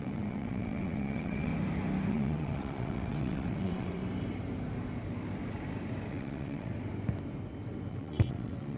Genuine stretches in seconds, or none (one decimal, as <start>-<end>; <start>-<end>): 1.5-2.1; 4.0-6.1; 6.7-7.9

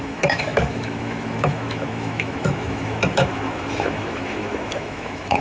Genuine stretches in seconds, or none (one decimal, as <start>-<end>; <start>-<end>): none

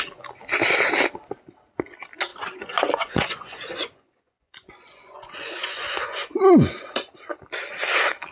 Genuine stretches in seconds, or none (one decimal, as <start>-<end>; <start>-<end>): 0.0-2.3; 6.8-8.3

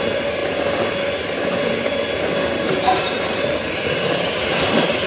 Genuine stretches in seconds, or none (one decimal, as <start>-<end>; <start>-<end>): 0.0-5.1

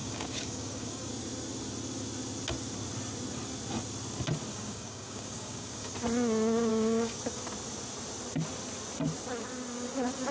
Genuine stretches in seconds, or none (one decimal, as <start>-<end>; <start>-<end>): 1.1-4.5; 5.9-6.7; 7.2-10.3

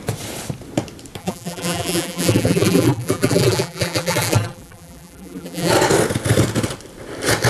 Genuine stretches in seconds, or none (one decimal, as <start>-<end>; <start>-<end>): 0.0-1.2; 5.7-7.5

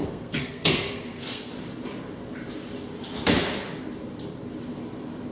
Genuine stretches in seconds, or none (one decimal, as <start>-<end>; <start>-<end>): 1.5-5.3

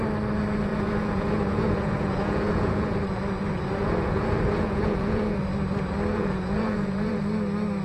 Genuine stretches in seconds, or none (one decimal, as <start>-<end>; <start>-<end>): 0.0-0.7; 3.0-3.8; 5.4-6.1; 7.2-7.8